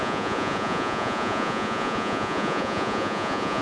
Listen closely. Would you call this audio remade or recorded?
remade